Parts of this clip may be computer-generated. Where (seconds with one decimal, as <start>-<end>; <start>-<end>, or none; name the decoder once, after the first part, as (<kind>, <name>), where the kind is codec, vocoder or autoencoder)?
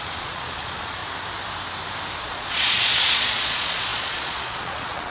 0.0-1.0 (vocoder, Vocos); 2.2-5.1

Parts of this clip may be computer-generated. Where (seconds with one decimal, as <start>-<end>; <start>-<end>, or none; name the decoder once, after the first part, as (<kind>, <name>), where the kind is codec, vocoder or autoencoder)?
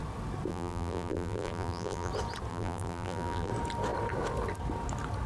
0.5-2.1 (vocoder, BigVGAN v2); 2.5-3.5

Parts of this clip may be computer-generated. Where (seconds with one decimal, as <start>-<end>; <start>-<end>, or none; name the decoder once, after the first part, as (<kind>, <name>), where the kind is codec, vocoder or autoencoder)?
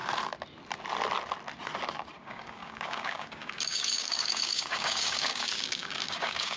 2.2-6.6 (codec, DAC)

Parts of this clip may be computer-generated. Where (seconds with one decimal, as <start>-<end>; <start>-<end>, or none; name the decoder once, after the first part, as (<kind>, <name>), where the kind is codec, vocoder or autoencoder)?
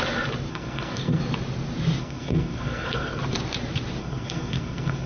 0.5-1.2 (codec, SNAC); 2.0-3.2; 4.0-5.1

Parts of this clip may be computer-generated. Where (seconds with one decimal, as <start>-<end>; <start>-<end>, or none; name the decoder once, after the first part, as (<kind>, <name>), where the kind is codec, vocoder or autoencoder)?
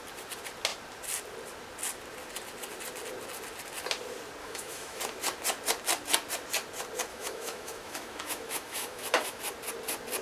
4.4-5.0 (autoencoder, DAC-VAE); 7.1-9.4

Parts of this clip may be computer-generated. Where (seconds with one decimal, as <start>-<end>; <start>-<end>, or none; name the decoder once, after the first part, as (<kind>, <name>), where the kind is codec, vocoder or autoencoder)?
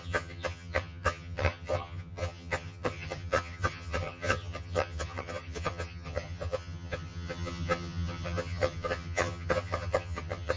0.0-10.6 (vocoder, HiFi-GAN)